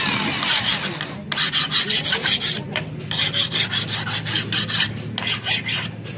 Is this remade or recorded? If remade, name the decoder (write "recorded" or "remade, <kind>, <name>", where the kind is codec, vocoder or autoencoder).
recorded